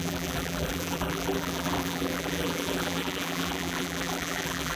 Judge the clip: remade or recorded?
remade